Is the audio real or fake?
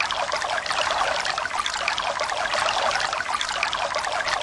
real